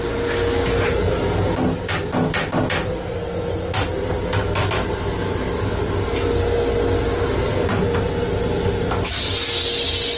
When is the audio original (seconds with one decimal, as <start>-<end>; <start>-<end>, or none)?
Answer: 0.0-5.2; 5.8-10.2